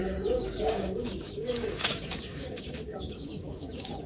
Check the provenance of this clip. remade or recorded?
remade